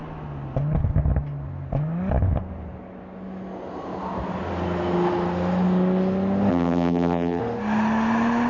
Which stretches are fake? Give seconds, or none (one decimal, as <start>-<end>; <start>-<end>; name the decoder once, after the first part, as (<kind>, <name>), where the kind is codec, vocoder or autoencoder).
6.5-7.4 (vocoder, BigVGAN v2)